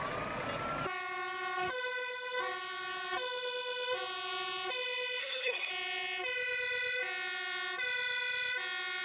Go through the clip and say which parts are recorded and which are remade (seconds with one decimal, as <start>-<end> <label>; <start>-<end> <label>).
0.0-5.2 recorded; 5.2-5.7 remade; 5.7-9.0 recorded